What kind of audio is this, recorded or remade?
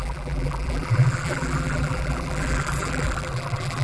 remade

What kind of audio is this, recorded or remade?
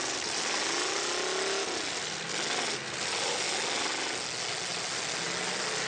recorded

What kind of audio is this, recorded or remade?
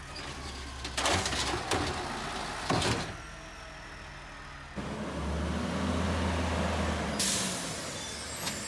recorded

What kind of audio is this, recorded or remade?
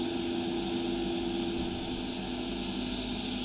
recorded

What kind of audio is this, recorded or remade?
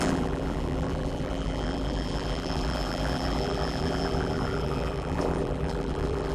remade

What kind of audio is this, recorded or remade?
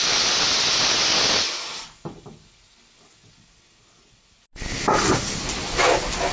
recorded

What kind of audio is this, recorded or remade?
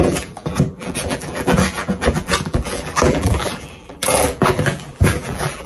remade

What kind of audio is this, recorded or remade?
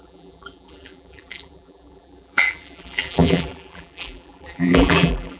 remade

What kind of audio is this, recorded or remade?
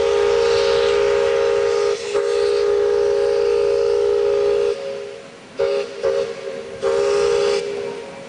recorded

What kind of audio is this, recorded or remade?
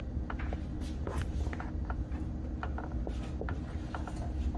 recorded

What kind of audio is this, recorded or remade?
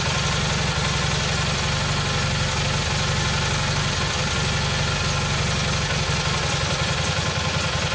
recorded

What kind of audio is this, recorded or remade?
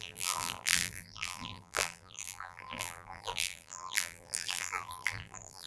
remade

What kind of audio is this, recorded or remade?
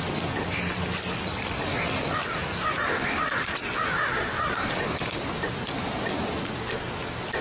recorded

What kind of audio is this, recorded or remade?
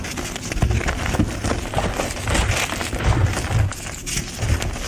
recorded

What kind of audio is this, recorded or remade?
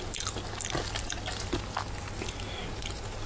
recorded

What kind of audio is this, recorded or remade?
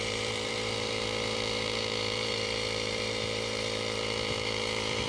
remade